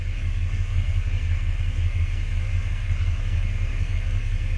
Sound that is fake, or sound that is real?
fake